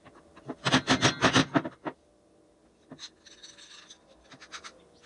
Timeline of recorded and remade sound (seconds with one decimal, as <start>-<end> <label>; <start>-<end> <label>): 0.0-5.1 recorded